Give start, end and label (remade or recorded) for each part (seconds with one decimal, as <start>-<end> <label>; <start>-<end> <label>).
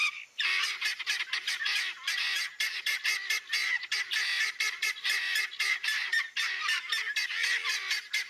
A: 0.0-0.6 remade; 0.6-3.6 recorded; 3.6-4.5 remade; 4.5-6.1 recorded; 6.1-6.9 remade; 6.9-8.3 recorded